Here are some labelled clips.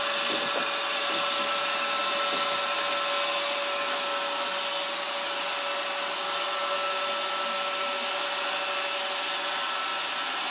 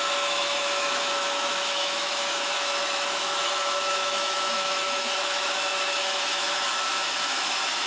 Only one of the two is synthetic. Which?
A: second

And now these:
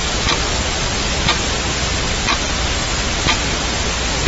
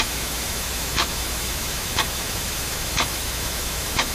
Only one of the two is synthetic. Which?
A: second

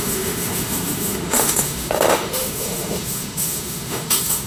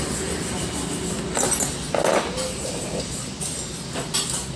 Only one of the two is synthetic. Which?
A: first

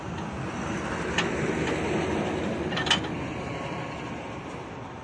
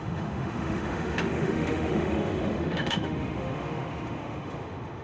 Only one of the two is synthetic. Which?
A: second